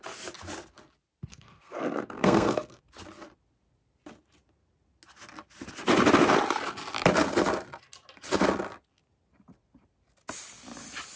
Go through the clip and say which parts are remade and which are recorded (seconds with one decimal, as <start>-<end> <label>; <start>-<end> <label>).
0.0-1.3 recorded; 1.3-2.8 remade; 2.8-11.2 recorded